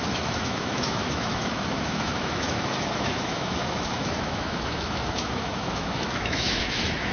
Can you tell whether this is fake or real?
fake